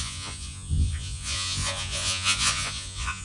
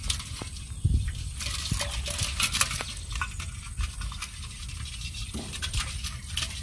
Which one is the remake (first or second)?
first